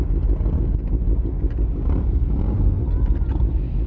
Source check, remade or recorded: recorded